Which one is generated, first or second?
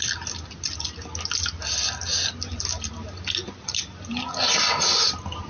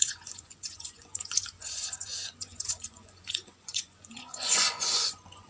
second